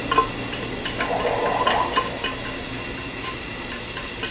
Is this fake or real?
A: real